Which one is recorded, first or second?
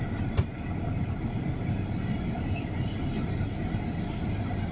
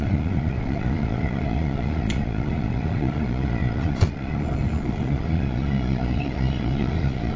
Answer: first